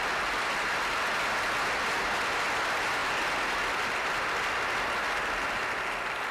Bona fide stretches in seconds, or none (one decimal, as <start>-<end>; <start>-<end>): 0.0-6.3